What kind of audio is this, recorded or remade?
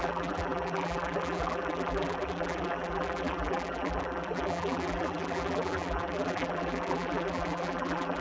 remade